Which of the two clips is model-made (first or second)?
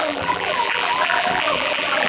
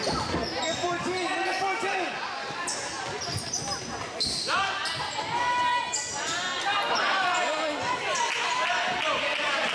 first